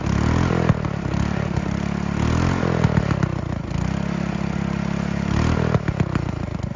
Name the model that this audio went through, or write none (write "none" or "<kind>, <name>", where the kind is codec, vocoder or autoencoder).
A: none